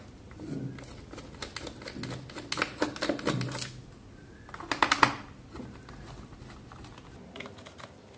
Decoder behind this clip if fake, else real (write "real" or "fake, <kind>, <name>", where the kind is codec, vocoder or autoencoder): real